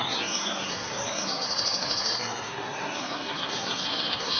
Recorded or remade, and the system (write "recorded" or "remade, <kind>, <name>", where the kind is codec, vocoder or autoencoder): remade, codec, SNAC